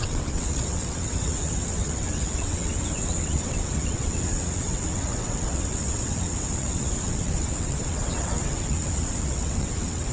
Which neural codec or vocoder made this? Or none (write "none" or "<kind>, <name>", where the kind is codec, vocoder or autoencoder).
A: vocoder, WaveNeXt